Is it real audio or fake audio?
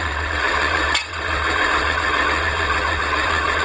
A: fake